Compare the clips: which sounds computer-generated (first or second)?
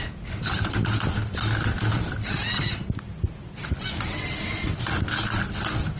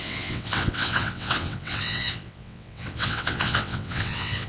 second